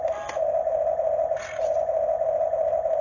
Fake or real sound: real